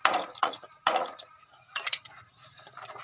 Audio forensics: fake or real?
fake